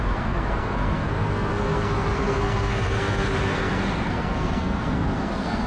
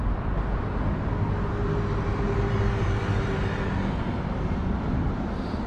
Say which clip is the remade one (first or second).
first